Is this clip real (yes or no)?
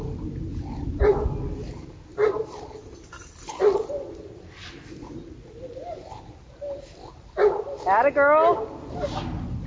yes